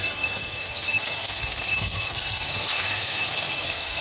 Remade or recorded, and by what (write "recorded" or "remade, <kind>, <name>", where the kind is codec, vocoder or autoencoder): remade, codec, SNAC